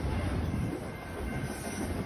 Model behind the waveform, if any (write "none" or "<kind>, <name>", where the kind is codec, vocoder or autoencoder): none